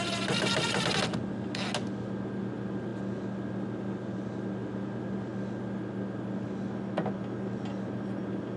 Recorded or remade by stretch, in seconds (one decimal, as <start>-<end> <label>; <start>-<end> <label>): 0.0-8.6 recorded